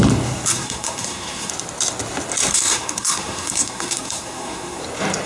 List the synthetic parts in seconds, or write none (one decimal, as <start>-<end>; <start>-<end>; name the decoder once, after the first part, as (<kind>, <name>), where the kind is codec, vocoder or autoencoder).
0.5-1.5 (codec, SNAC); 2.5-4.8